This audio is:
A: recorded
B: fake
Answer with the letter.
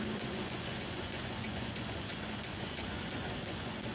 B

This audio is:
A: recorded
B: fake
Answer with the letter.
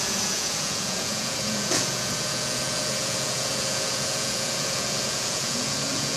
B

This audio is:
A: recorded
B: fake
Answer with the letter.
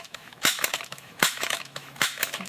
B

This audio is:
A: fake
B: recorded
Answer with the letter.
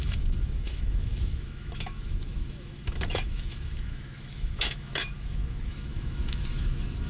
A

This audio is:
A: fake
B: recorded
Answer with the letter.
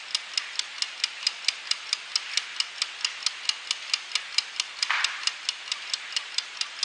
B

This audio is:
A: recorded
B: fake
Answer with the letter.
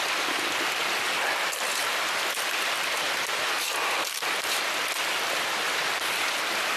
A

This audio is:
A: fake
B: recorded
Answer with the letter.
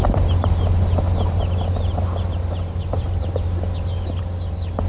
A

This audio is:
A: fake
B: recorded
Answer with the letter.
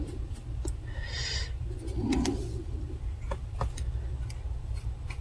B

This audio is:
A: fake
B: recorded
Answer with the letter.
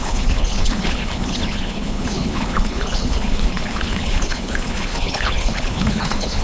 A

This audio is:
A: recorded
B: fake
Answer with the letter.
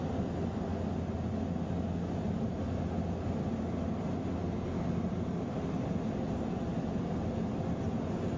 A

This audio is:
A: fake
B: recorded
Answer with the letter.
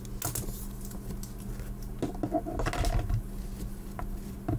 B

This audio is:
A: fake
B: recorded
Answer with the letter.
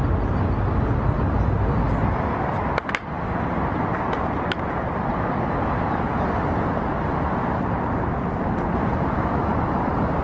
B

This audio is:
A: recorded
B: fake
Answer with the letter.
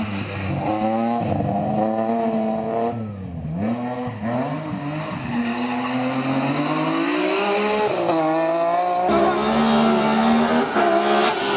A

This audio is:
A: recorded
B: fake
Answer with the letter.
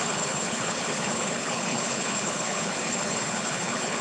B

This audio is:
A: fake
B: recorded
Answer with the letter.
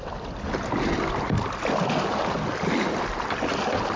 B